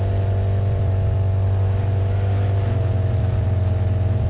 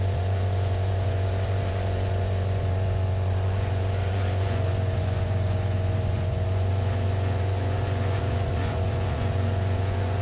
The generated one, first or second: second